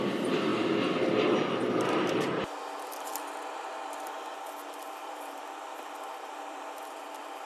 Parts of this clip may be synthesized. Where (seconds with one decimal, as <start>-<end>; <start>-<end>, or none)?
0.0-0.5; 4.9-7.4